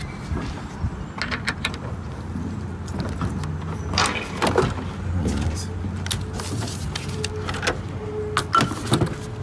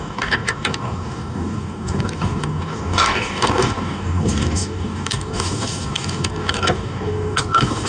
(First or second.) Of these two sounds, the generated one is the second